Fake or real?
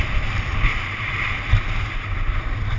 real